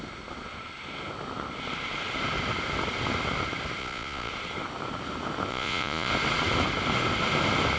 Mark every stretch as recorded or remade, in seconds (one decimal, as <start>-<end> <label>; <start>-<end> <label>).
0.0-3.8 recorded; 3.8-4.3 remade; 4.3-5.5 recorded; 5.5-6.1 remade; 6.1-7.8 recorded